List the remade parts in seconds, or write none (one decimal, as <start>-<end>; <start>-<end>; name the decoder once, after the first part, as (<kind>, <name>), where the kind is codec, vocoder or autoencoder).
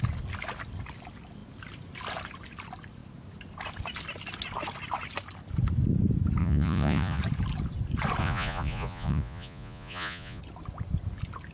6.4-7.2 (vocoder, Vocos); 8.2-10.4